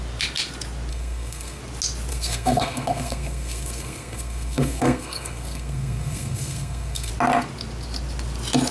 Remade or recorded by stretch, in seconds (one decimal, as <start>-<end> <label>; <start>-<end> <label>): 0.0-0.9 recorded; 0.9-1.6 remade; 1.6-2.1 recorded; 2.1-7.1 remade; 7.1-8.7 recorded